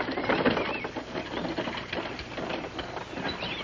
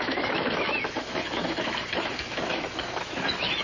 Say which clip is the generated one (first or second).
second